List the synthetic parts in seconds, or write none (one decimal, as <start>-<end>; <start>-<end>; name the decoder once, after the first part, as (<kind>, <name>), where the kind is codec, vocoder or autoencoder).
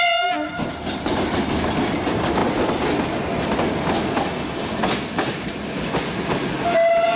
none